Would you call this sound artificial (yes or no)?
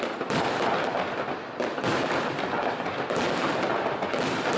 no